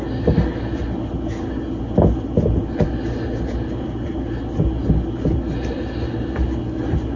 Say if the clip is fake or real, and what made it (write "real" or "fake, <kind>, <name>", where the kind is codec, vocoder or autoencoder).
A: real